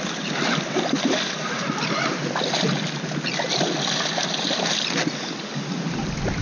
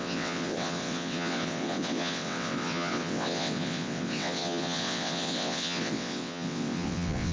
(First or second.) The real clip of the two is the first